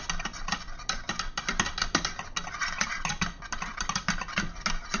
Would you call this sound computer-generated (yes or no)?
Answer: no